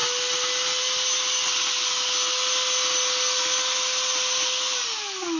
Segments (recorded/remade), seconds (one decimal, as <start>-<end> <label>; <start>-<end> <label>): 0.0-5.4 recorded